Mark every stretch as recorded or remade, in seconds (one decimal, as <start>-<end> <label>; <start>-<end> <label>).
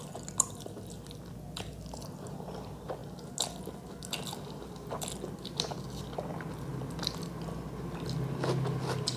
0.0-9.2 recorded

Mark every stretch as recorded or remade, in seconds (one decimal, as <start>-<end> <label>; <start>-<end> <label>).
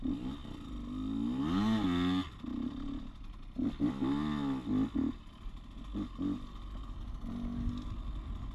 0.0-8.5 recorded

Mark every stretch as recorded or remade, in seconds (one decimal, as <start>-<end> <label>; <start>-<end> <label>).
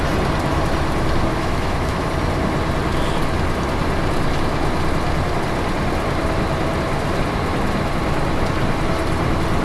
0.0-1.3 recorded; 1.3-2.1 remade; 2.1-9.6 recorded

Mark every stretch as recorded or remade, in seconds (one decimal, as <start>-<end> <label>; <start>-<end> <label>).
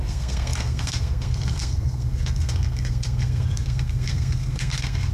0.0-5.1 remade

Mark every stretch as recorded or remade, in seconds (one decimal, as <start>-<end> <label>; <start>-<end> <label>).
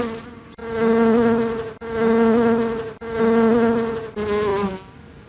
0.0-5.3 recorded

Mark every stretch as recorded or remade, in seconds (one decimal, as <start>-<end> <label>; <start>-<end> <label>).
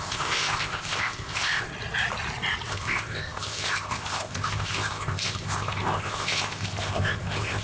0.0-1.7 remade; 1.7-2.7 recorded; 2.7-7.6 remade